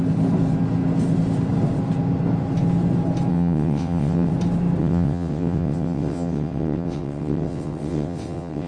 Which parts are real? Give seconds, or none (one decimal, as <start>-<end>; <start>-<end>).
0.0-3.3; 4.3-4.8